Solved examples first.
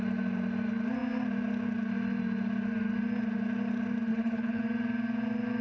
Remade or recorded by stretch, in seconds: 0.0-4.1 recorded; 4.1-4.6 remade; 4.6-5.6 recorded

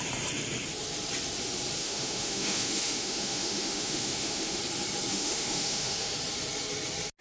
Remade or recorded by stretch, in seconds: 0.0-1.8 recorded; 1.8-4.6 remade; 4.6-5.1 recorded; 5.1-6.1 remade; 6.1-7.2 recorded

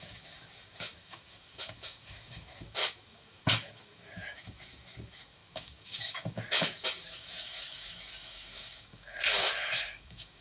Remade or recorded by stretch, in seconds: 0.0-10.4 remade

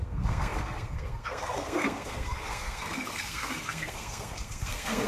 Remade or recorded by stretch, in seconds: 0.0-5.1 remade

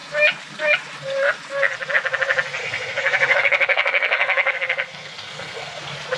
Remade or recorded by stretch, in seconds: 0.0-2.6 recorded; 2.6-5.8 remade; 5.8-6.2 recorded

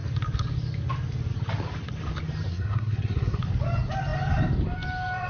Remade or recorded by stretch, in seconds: 0.0-2.5 recorded; 2.5-3.4 remade; 3.4-5.3 recorded